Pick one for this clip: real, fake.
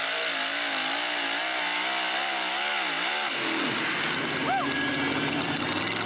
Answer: real